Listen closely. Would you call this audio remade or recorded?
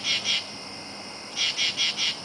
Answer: recorded